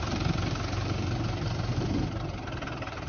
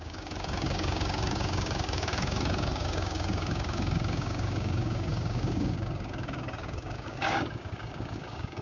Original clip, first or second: first